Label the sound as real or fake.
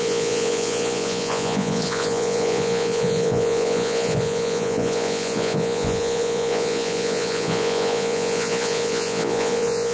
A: fake